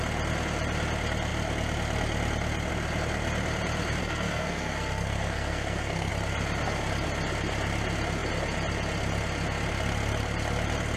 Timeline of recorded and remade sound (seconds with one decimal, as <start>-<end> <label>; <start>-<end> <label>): 0.0-4.0 recorded; 4.0-6.1 remade; 6.1-11.0 recorded

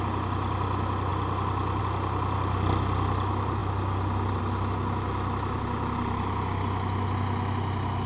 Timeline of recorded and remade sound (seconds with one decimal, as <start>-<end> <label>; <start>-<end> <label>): 0.0-8.1 recorded

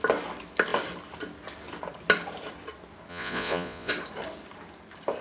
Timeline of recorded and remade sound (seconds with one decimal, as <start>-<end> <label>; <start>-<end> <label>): 0.0-3.1 recorded; 3.1-3.9 remade; 3.9-5.2 recorded

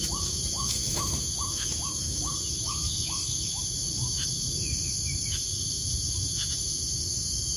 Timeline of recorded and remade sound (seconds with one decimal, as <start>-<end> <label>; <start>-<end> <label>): 0.0-7.6 remade

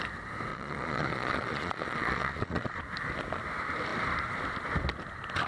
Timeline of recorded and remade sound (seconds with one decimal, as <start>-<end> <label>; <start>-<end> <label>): 0.0-0.5 recorded; 0.5-2.8 remade; 2.8-5.5 recorded

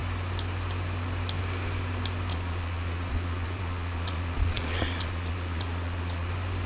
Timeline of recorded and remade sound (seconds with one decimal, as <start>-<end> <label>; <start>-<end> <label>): 0.0-2.3 recorded; 2.3-6.3 remade; 6.3-6.7 recorded

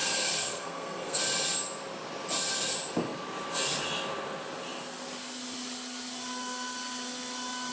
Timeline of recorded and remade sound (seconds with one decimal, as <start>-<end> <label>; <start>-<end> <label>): 0.0-1.2 remade; 1.2-7.7 recorded

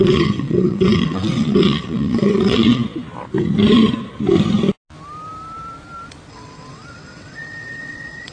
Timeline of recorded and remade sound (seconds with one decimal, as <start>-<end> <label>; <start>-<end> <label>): 0.0-2.8 remade; 2.8-6.3 recorded; 6.3-8.3 remade